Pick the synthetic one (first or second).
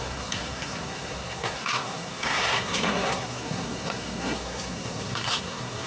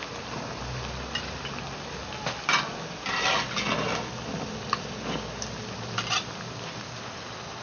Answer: first